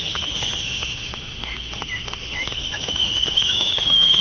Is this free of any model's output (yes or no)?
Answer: no